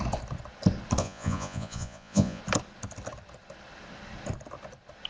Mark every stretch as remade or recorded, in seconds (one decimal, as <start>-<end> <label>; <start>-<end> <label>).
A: 0.0-1.0 recorded; 1.0-2.4 remade; 2.4-5.1 recorded

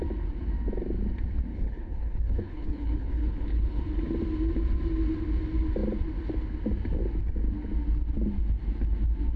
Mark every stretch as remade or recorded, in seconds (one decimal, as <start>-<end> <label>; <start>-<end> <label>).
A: 0.0-1.5 recorded; 1.5-3.8 remade; 3.8-9.4 recorded

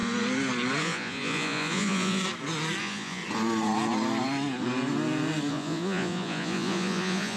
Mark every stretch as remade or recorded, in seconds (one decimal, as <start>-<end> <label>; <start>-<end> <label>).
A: 0.0-0.8 recorded; 0.8-2.2 remade; 2.2-2.8 recorded; 2.8-3.2 remade; 3.2-5.5 recorded; 5.5-7.4 remade

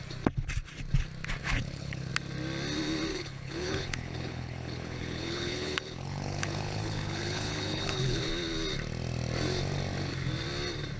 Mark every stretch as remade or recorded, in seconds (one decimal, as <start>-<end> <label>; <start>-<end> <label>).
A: 0.0-1.4 recorded; 1.4-2.1 remade; 2.1-3.1 recorded; 3.1-8.3 remade; 8.3-11.0 recorded

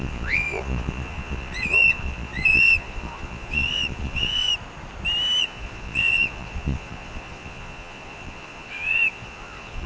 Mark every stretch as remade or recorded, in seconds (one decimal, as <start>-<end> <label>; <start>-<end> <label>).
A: 0.0-4.5 remade; 4.5-5.4 recorded; 5.4-9.9 remade

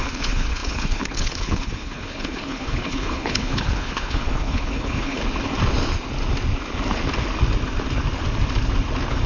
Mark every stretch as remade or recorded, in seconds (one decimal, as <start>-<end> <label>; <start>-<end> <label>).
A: 0.0-5.2 remade; 5.2-9.3 recorded